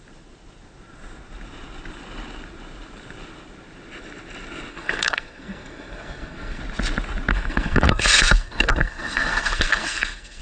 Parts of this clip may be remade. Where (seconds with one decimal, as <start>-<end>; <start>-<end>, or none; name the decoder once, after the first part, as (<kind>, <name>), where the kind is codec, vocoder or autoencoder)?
4.7-6.6 (codec, SNAC); 7.3-10.4